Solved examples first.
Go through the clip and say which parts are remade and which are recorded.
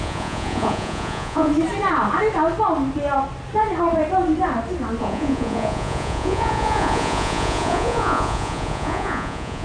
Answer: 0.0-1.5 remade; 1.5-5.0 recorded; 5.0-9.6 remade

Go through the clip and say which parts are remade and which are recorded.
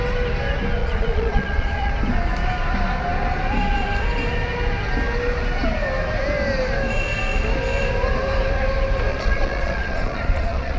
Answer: 0.0-0.8 recorded; 0.8-1.9 remade; 1.9-9.1 recorded; 9.1-10.8 remade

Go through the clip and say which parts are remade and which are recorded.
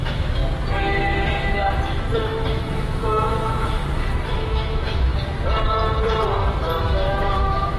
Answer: 0.0-0.4 remade; 0.4-2.5 recorded; 2.5-3.8 remade; 3.8-4.3 recorded; 4.3-5.1 remade; 5.1-6.8 recorded; 6.8-7.8 remade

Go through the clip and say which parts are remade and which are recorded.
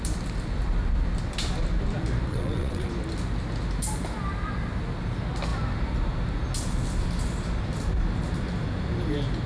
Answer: 0.0-2.3 recorded; 2.3-2.9 remade; 2.9-9.5 recorded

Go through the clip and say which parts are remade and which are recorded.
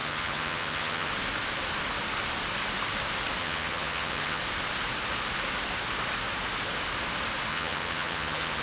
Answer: 0.0-1.1 remade; 1.1-3.4 recorded; 3.4-4.4 remade; 4.4-7.5 recorded; 7.5-8.6 remade